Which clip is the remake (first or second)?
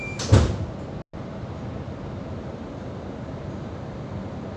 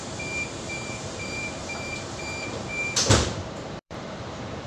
second